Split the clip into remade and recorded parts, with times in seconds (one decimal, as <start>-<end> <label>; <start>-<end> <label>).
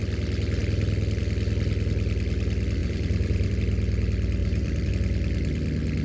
0.0-2.8 recorded; 2.8-3.5 remade; 3.5-4.4 recorded; 4.4-4.9 remade; 4.9-6.0 recorded